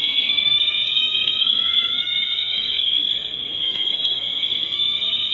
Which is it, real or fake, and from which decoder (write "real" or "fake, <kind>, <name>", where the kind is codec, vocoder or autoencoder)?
fake, codec, SNAC